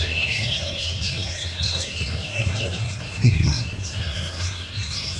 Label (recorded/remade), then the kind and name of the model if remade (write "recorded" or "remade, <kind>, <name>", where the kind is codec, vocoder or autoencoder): remade, codec, SNAC